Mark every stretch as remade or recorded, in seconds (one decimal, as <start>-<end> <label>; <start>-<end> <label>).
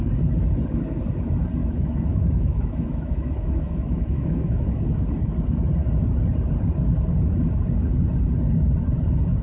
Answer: 0.0-1.6 recorded; 1.6-4.8 remade; 4.8-9.4 recorded